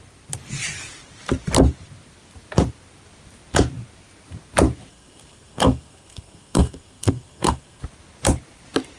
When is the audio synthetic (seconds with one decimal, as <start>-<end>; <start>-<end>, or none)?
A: 4.9-7.8